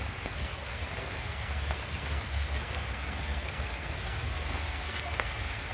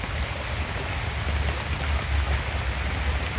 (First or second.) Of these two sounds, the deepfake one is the first